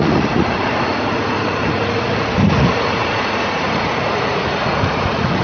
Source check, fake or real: fake